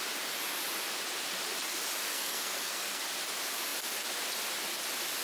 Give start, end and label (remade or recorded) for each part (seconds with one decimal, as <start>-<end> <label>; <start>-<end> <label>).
0.0-2.0 recorded; 2.0-3.0 remade; 3.0-5.2 recorded